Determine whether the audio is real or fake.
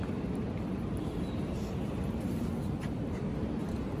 fake